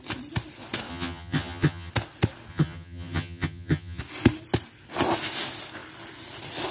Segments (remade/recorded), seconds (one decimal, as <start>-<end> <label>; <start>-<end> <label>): 0.0-0.9 recorded; 0.9-1.9 remade; 1.9-2.5 recorded; 2.5-4.0 remade; 4.0-6.7 recorded